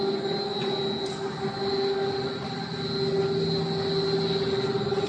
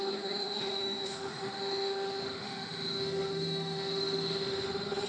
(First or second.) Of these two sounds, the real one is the first